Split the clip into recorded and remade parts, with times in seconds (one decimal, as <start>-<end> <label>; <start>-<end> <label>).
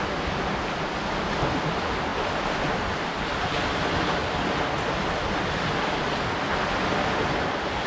0.0-7.9 recorded